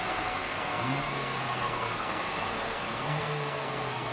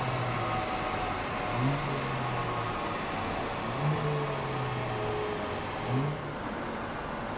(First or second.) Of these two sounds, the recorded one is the second